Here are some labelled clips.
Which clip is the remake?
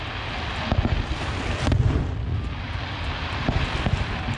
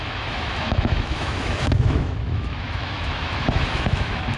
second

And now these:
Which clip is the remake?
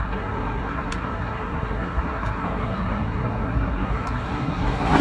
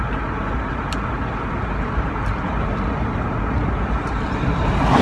first